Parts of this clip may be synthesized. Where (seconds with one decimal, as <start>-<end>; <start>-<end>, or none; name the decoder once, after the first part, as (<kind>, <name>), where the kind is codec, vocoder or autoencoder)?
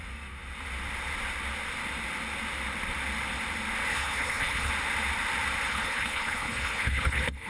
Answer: 3.9-4.7 (codec, HILCodec); 5.7-7.5